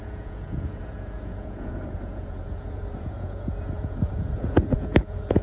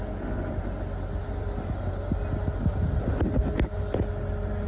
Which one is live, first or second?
second